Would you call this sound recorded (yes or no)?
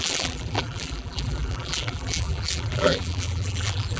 no